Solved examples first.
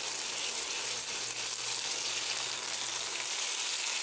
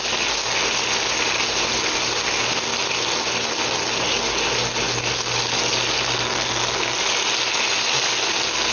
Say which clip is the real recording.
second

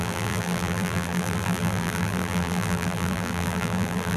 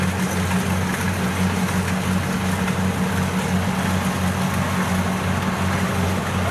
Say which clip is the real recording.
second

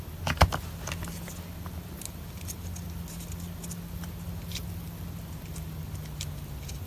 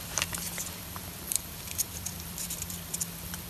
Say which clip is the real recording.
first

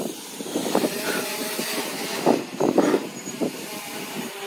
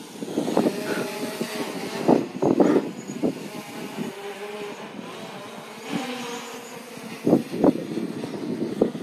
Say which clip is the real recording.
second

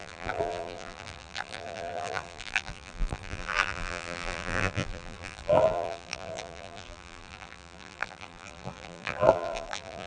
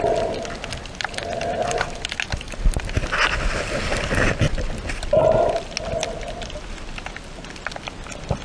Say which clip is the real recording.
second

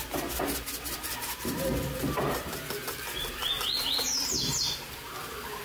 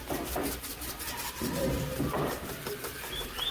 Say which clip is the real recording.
first